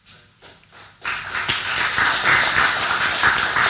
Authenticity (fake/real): real